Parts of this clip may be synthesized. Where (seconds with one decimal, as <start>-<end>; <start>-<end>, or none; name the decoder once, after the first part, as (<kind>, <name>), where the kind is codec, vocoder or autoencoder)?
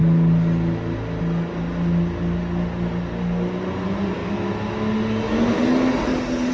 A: none